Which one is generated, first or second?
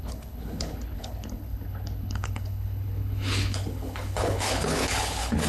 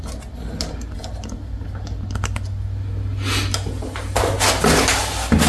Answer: first